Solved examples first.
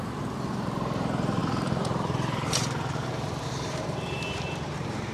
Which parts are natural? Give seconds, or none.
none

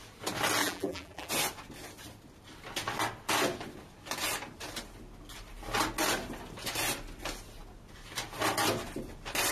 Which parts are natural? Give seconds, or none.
0.0-0.6; 1.3-9.5